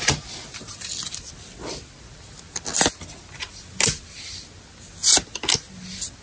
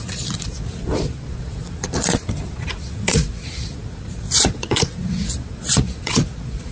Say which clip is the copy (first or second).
second